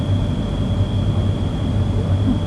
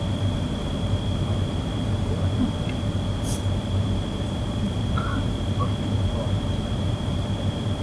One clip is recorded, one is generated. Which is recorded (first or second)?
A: first